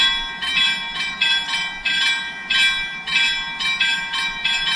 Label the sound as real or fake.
real